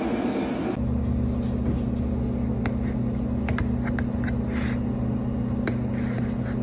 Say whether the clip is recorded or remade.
recorded